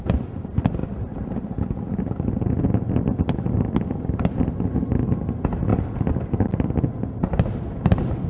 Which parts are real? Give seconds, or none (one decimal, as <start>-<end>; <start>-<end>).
0.0-8.3